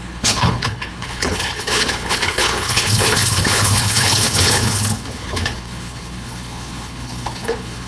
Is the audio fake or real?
fake